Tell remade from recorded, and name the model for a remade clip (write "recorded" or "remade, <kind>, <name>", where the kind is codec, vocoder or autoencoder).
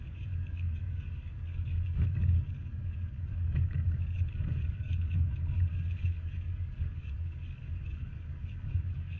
remade, codec, DAC